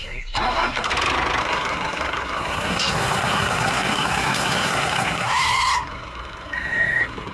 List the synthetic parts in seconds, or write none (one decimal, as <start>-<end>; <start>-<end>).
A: 0.0-0.9; 1.4-7.3